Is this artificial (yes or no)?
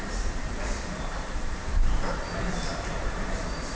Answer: yes